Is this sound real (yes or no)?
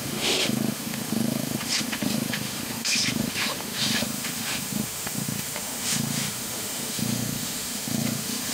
no